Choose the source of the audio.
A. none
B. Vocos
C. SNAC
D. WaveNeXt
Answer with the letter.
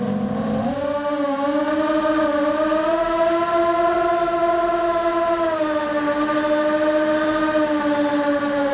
A